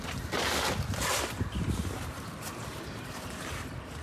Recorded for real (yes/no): yes